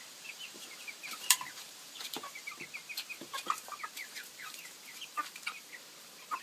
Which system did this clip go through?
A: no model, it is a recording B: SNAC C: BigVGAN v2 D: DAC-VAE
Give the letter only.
C